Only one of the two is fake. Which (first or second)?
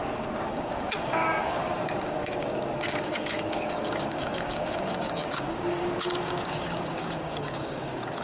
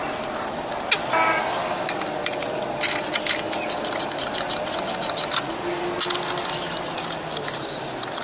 first